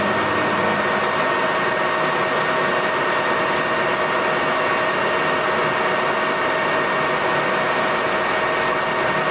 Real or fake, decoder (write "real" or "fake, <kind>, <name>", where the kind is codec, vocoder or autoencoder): real